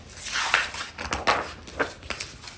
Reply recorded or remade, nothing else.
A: recorded